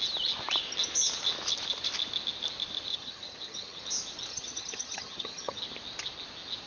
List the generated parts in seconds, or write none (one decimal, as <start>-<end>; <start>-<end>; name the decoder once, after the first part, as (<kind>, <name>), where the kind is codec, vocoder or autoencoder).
2.9-3.8 (vocoder, HiFi-GAN); 4.3-5.6